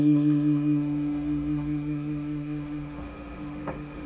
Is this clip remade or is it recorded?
remade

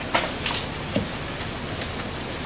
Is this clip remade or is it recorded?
recorded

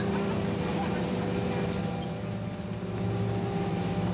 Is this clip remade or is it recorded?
recorded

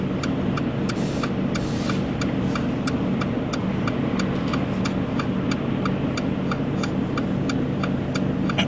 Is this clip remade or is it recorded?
recorded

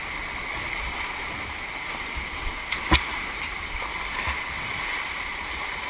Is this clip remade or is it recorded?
recorded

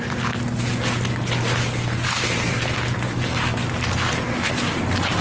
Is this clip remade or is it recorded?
recorded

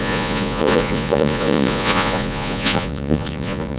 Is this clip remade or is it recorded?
remade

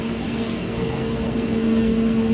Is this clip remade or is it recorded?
remade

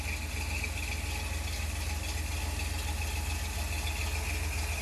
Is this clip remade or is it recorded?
recorded